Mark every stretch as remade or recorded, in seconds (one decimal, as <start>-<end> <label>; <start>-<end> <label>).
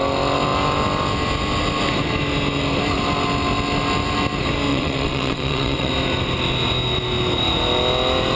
0.0-4.7 recorded; 4.7-5.9 remade; 5.9-8.4 recorded